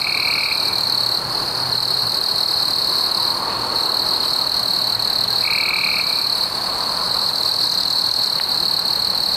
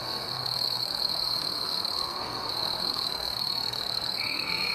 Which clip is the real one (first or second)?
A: first